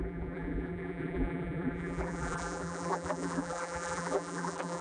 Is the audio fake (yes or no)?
yes